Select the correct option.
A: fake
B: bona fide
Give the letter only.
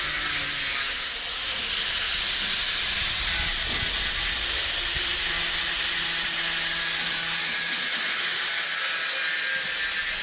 B